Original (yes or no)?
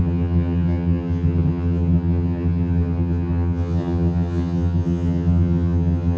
no